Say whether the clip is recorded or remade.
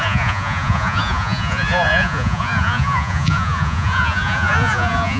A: remade